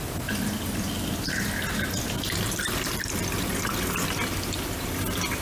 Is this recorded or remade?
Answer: recorded